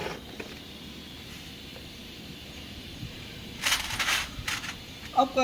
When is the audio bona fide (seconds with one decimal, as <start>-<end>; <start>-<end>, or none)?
0.0-1.2